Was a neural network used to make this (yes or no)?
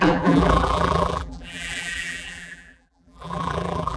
yes